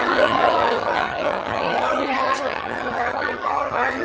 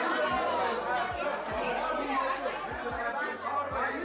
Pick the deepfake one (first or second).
first